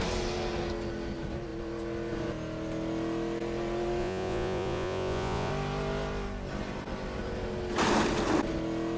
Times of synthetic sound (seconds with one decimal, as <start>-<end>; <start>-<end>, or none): 4.0-5.5